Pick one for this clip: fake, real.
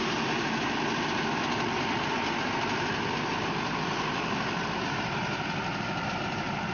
real